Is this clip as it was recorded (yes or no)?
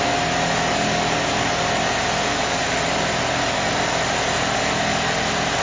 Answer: yes